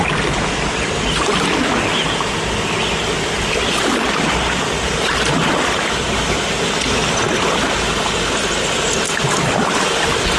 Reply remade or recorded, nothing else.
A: recorded